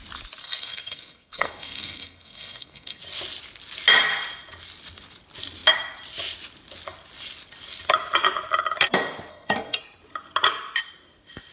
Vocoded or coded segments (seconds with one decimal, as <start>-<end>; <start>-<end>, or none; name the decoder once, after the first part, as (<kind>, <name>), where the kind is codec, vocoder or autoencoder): 0.4-3.0 (codec, SNAC); 9.3-9.8